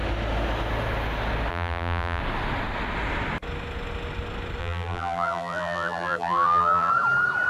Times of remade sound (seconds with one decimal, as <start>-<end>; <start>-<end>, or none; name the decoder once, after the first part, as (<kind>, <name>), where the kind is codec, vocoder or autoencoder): 1.5-2.2 (vocoder, BigVGAN v2); 4.6-6.9